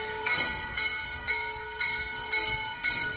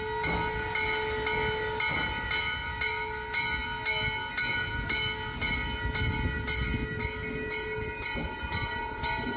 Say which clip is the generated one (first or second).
first